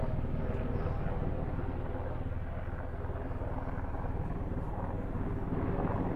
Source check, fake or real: real